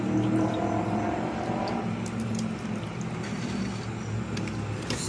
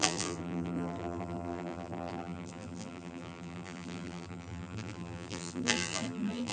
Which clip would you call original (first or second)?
first